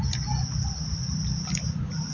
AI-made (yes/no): no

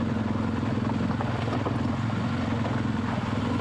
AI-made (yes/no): no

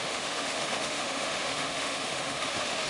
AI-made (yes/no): yes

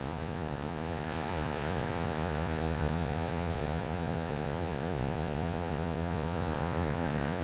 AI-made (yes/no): yes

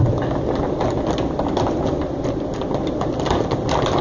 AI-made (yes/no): no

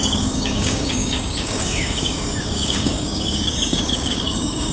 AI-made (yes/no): yes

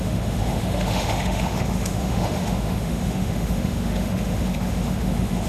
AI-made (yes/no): yes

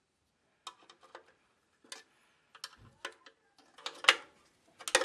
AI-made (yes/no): no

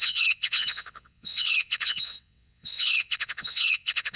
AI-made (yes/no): yes